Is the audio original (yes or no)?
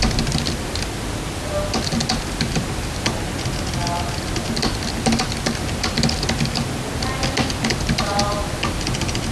yes